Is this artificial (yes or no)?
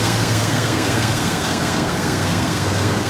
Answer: yes